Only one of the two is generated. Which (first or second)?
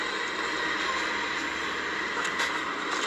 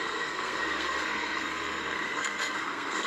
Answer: second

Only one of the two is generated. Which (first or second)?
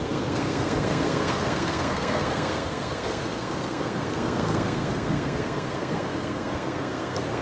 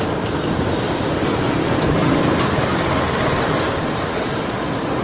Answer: first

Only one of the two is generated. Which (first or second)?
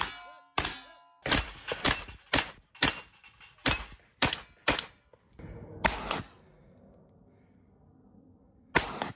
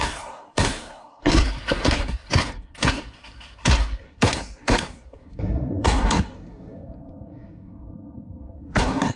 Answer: second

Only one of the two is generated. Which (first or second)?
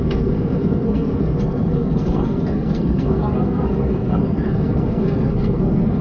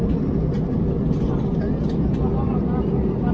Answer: first